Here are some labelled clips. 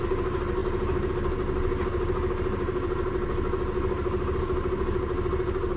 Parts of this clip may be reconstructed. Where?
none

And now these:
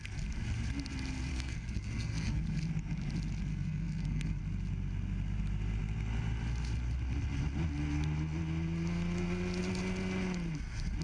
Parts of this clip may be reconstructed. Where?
1.3-2.4; 3.5-4.4